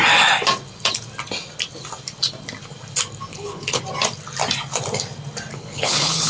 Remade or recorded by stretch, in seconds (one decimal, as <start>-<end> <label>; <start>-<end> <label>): 0.0-3.3 recorded; 3.3-3.8 remade; 3.8-5.5 recorded; 5.5-6.3 remade